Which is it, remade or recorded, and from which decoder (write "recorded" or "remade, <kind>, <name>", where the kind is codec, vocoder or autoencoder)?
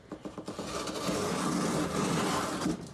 recorded